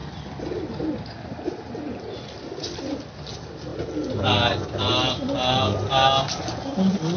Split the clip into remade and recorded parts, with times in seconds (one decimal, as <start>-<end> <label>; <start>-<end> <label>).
0.0-7.2 recorded